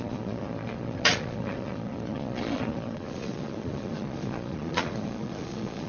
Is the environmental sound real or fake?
fake